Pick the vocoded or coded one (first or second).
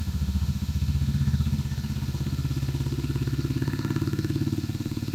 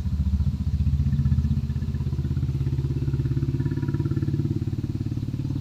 first